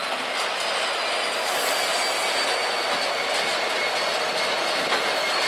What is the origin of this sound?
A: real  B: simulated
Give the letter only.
A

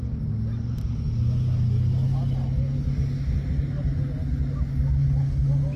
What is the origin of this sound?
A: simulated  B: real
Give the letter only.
B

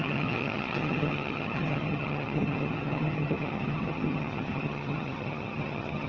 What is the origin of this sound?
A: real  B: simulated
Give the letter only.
B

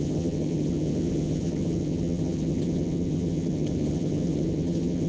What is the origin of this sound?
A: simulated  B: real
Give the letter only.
A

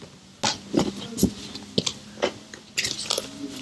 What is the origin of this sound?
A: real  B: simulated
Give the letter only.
A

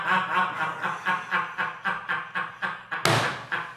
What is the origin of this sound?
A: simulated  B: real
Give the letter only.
B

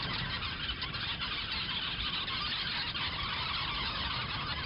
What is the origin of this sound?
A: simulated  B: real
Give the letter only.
B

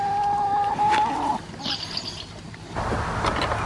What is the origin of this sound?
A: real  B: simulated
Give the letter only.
A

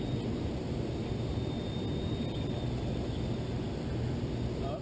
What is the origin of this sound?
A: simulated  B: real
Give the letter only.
B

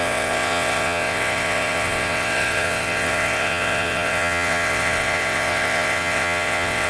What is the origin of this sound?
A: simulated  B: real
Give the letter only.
A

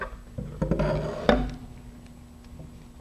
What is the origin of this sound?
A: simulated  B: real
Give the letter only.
B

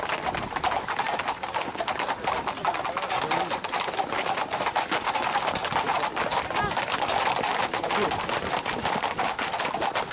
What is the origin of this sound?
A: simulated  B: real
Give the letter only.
B